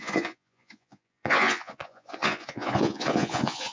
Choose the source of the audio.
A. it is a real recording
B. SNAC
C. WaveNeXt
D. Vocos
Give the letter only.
D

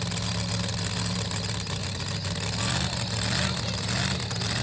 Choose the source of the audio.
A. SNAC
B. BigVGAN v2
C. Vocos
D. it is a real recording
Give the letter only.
D